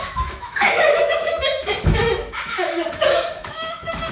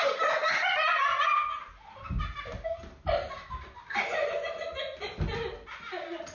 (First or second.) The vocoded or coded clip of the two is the first